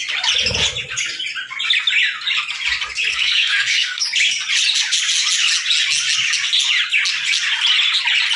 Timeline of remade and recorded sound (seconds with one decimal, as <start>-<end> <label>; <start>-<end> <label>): 0.0-3.1 recorded; 3.1-4.0 remade; 4.0-8.4 recorded